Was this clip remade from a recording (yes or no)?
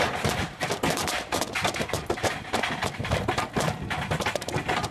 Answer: no